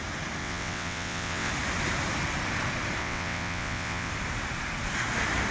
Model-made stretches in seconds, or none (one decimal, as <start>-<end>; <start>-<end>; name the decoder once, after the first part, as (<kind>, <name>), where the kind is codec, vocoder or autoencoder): 0.4-1.5 (vocoder, WaveNeXt); 3.0-4.1

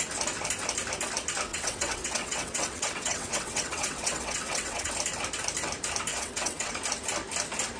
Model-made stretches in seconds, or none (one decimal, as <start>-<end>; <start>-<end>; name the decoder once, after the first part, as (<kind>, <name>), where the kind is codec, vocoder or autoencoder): 1.5-4.9 (vocoder, WaveNeXt); 6.1-6.7

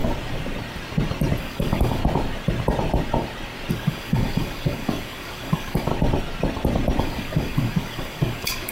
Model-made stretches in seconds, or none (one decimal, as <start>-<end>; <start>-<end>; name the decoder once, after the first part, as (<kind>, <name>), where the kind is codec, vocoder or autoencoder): 1.4-2.0 (codec, DAC); 3.7-5.9; 7.0-8.7